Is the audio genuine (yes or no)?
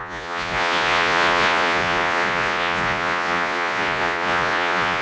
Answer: no